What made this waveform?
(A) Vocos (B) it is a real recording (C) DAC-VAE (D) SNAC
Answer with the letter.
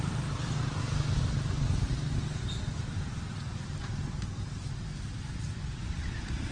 B